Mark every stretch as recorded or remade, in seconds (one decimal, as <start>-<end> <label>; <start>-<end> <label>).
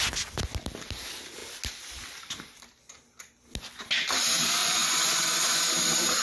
0.0-4.6 recorded; 4.6-5.6 remade; 5.6-6.2 recorded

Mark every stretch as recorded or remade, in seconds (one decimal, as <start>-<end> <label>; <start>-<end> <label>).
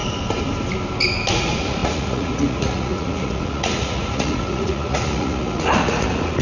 0.0-1.3 recorded; 1.3-6.4 remade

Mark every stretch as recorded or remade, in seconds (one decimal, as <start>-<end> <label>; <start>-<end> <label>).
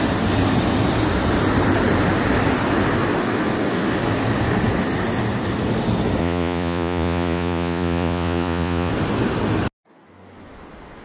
0.0-6.2 recorded; 6.2-8.9 remade; 8.9-11.0 recorded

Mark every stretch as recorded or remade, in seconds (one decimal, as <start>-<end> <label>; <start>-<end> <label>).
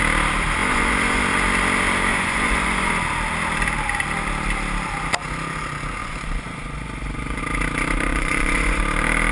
0.0-0.6 recorded; 0.6-1.2 remade; 1.2-2.1 recorded; 2.1-2.9 remade; 2.9-6.0 recorded; 6.0-7.4 remade; 7.4-8.1 recorded; 8.1-8.8 remade; 8.8-9.3 recorded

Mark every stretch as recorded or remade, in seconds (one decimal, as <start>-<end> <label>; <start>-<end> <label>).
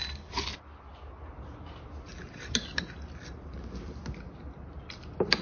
0.0-5.4 recorded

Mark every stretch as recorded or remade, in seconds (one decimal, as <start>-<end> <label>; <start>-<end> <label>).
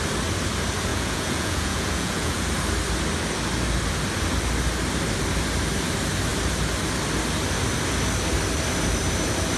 0.0-0.9 recorded; 0.9-2.4 remade; 2.4-9.6 recorded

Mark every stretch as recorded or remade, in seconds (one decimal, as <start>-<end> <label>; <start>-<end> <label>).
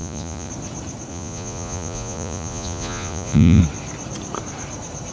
0.0-0.5 remade; 0.5-1.1 recorded; 1.1-3.6 remade; 3.6-5.1 recorded